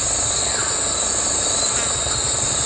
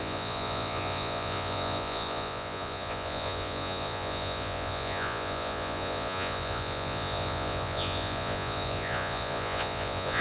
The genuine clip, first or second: first